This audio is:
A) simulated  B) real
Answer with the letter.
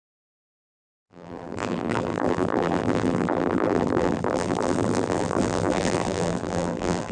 A